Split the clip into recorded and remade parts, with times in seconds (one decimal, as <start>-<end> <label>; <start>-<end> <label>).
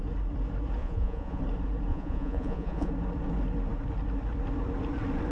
0.0-0.8 recorded; 0.8-1.4 remade; 1.4-1.9 recorded; 1.9-2.9 remade; 2.9-5.3 recorded